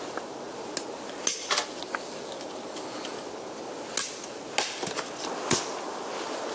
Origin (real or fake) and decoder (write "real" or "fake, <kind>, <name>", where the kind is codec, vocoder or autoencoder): real